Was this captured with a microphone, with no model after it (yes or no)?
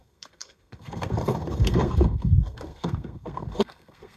no